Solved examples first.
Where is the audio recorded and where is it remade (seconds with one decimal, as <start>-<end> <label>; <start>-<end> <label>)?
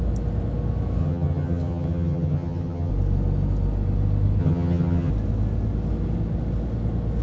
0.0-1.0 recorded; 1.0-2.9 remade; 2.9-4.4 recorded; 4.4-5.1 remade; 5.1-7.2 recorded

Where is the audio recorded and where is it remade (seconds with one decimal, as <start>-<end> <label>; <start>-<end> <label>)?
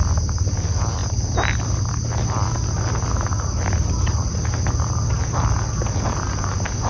0.0-6.9 recorded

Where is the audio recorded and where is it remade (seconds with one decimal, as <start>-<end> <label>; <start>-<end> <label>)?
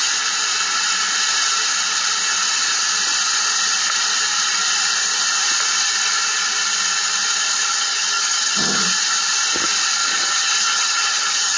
0.0-7.7 recorded; 7.7-8.8 remade; 8.8-10.0 recorded; 10.0-11.6 remade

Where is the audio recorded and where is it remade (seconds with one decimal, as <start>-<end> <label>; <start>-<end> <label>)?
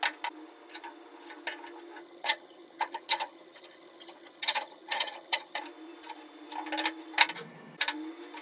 0.0-2.0 recorded; 2.0-5.6 remade; 5.6-8.4 recorded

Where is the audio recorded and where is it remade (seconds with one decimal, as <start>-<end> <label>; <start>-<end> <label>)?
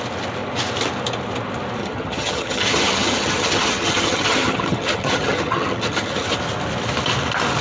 0.0-1.8 recorded; 1.8-6.4 remade; 6.4-7.6 recorded